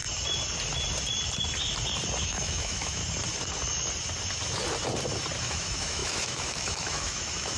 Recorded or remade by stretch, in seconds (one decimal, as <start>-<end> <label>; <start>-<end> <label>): 0.0-2.2 recorded; 2.2-3.0 remade; 3.0-5.4 recorded; 5.4-7.6 remade